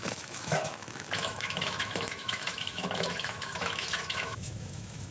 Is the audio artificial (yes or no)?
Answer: yes